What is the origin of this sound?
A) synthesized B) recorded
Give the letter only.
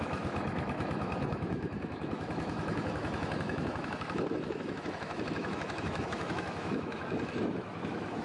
A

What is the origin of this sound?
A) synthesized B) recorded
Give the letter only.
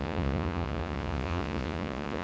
A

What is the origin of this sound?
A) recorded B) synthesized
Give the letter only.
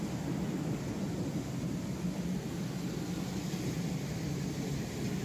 A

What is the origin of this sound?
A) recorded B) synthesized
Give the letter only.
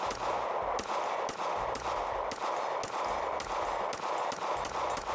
A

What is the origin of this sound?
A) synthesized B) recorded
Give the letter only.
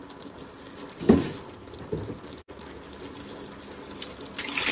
B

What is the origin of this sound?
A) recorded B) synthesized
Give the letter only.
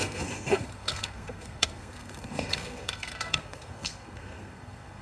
B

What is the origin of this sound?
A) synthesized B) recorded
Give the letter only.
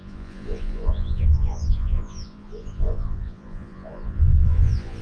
A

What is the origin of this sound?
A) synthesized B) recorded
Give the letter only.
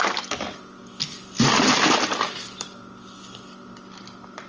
B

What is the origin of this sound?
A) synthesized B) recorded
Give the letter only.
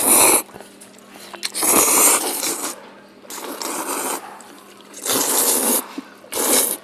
B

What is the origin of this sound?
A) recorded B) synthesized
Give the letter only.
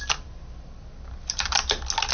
A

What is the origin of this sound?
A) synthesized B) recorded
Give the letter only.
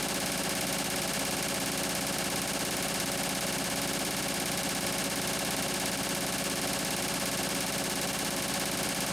B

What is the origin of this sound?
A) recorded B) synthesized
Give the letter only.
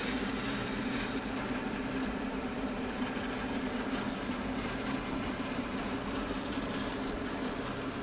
B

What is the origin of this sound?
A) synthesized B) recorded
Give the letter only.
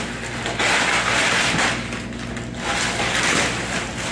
B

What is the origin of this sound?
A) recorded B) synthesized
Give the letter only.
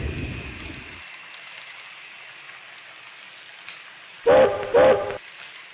A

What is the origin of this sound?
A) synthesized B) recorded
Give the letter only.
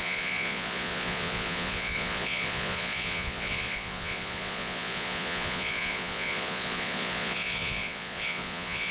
A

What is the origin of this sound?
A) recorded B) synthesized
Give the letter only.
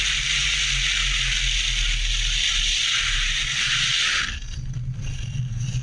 A